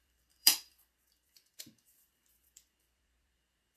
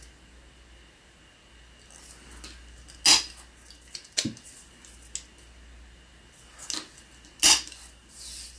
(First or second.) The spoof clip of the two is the first